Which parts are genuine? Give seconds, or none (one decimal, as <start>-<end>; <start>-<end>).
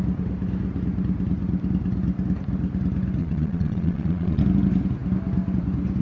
0.0-3.2; 4.4-6.0